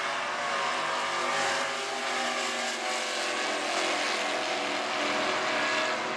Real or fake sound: real